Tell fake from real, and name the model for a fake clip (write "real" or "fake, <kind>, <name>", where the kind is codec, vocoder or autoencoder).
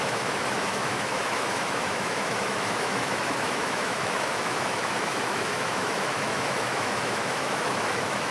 fake, autoencoder, DAC-VAE